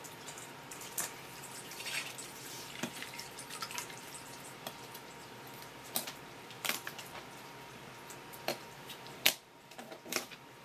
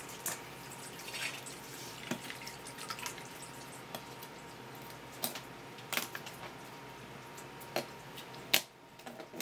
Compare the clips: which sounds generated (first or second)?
first